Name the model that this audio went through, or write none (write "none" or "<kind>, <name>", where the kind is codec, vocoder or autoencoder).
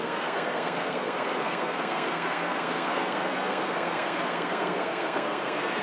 codec, SNAC